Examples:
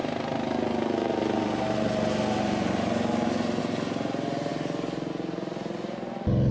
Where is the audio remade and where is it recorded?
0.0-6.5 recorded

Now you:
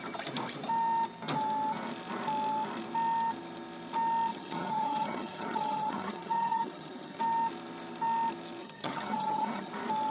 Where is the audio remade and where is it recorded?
0.0-4.3 recorded; 4.3-7.2 remade; 7.2-8.6 recorded; 8.6-9.7 remade; 9.7-10.1 recorded

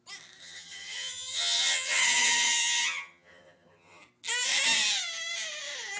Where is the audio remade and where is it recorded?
0.0-0.4 recorded; 0.4-4.0 remade; 4.0-6.0 recorded

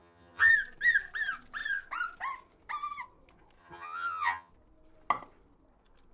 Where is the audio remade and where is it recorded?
0.0-0.5 remade; 0.5-3.6 recorded; 3.6-4.5 remade; 4.5-6.1 recorded

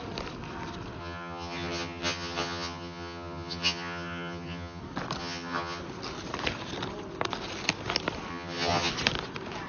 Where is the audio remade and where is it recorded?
0.0-1.0 recorded; 1.0-4.8 remade; 4.8-5.2 recorded; 5.2-5.8 remade; 5.8-8.3 recorded; 8.3-8.9 remade; 8.9-9.7 recorded

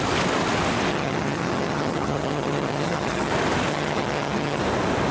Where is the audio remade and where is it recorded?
0.0-0.9 recorded; 0.9-3.3 remade; 3.3-3.7 recorded; 3.7-4.6 remade; 4.6-5.1 recorded

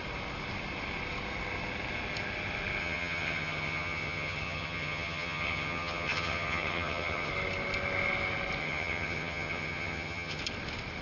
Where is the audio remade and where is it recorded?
0.0-2.8 recorded; 2.8-7.3 remade; 7.3-8.6 recorded; 8.6-10.4 remade; 10.4-11.0 recorded

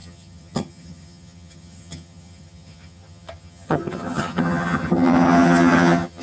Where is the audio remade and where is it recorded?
0.0-6.2 remade